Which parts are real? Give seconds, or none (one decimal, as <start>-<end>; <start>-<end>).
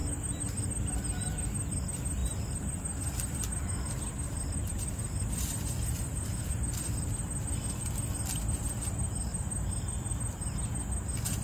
0.7-2.2; 6.5-9.3; 10.2-11.4